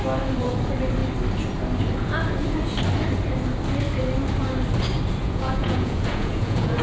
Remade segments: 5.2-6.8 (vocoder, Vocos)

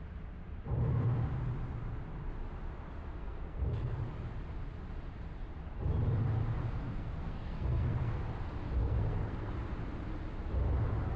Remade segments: 3.2-4.0 (codec, SNAC); 6.6-8.3; 8.8-9.5

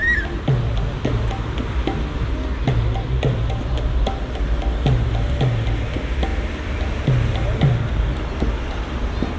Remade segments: none

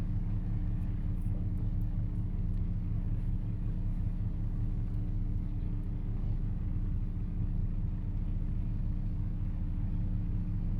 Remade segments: 0.0-7.6 (codec, DAC); 8.6-10.8

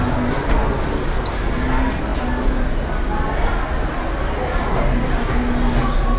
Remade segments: none

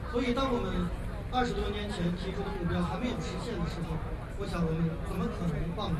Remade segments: none